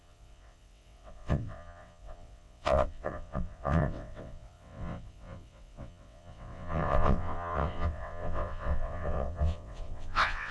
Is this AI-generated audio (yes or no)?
yes